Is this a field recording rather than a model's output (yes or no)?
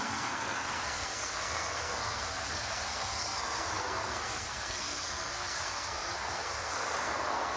no